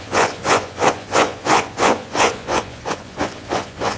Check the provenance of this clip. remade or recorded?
remade